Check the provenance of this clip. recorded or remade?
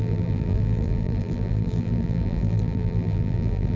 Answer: remade